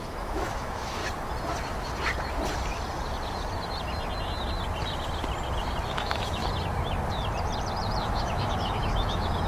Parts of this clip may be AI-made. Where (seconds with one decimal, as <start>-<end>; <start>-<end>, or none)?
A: 0.0-1.0; 5.9-6.4; 8.0-9.5